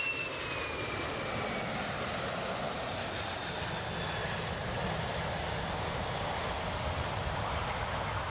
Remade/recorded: recorded